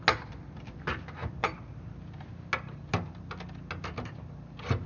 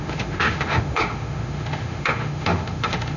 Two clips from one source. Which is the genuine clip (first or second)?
first